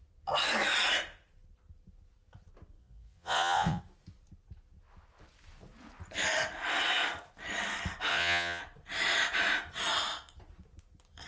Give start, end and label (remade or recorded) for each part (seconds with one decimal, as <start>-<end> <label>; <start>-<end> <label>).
0.0-2.8 recorded; 2.8-3.8 remade; 3.8-8.1 recorded; 8.1-8.6 remade; 8.6-11.3 recorded